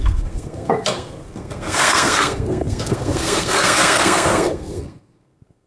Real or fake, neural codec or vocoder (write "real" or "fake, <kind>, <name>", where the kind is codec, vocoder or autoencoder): fake, codec, SNAC